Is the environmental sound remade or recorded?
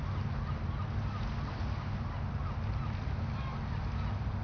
recorded